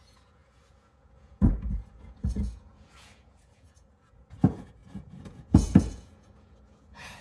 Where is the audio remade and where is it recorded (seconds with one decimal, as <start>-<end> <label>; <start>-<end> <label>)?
0.0-7.2 remade